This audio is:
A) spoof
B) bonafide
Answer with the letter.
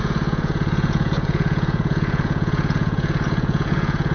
A